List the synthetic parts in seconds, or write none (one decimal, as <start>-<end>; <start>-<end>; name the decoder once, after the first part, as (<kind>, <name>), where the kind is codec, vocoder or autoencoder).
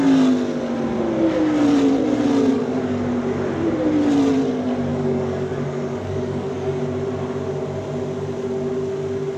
2.5-3.1 (codec, DAC); 4.9-6.8